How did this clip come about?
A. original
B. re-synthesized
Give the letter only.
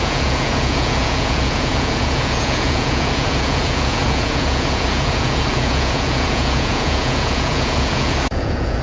B